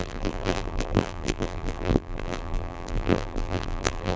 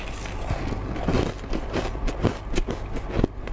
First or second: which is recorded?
second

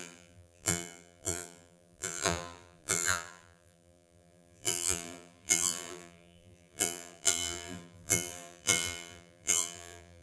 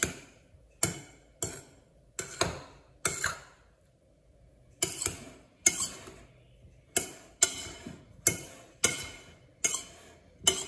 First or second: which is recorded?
second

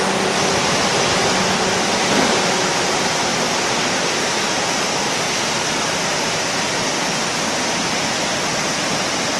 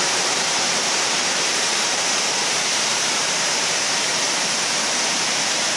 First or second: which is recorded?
first